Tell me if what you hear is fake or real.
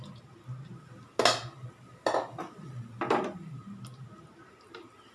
real